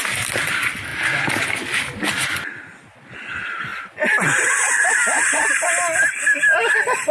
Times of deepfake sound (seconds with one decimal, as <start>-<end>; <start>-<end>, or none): none